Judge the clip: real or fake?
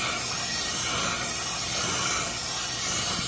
real